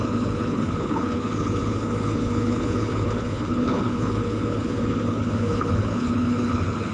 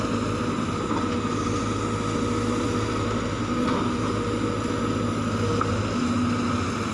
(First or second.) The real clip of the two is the second